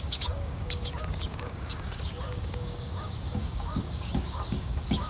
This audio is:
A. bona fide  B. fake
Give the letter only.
B